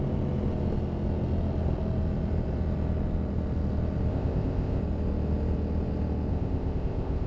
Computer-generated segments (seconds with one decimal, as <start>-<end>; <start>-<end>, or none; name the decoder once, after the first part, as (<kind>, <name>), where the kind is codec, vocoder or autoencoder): 4.1-4.8 (codec, ZipCodec); 6.3-7.3